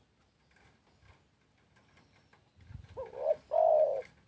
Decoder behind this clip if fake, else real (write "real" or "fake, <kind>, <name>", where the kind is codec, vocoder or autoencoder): real